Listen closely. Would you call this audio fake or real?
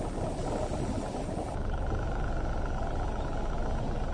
real